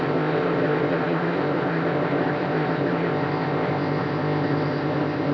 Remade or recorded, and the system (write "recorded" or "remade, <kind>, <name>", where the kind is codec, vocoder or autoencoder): remade, codec, ZipCodec